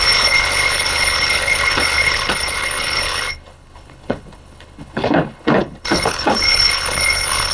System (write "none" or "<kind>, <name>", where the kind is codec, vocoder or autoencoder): codec, HILCodec